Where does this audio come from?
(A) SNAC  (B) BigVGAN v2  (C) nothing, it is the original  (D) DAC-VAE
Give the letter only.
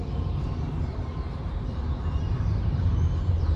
B